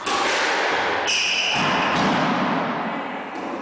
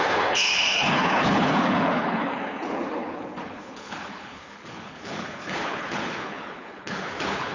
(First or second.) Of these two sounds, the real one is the first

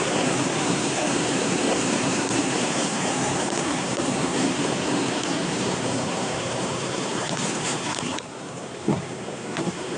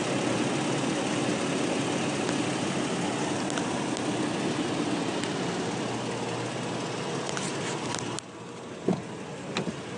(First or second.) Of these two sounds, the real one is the second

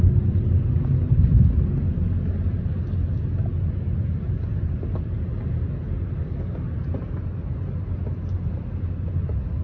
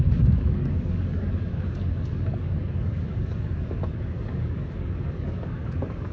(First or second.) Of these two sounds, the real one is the first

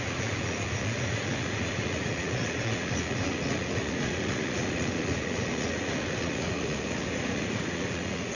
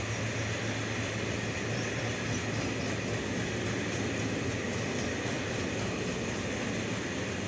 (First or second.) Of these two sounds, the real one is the second